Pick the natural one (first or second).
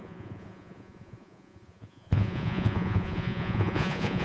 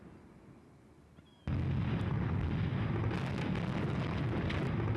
second